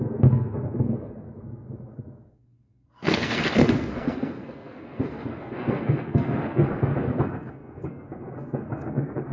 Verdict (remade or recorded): remade